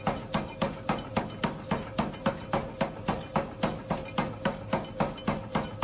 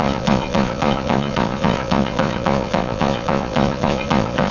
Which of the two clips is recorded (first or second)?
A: first